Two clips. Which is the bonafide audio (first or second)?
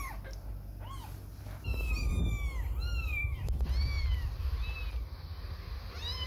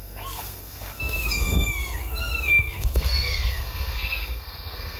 first